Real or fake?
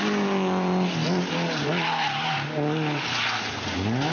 real